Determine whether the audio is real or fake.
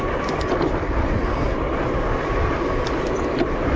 fake